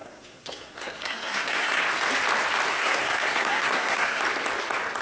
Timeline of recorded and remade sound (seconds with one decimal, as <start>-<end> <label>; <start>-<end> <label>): 0.0-1.8 remade; 1.8-2.7 recorded; 2.7-4.2 remade; 4.2-5.0 recorded